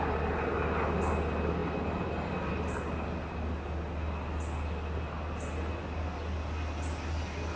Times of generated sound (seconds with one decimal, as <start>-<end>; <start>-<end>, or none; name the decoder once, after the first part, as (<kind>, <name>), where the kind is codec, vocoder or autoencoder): none